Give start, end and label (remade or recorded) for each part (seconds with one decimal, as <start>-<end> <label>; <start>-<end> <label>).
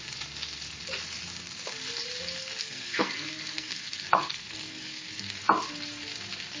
0.0-2.6 recorded; 2.6-5.3 remade; 5.3-6.6 recorded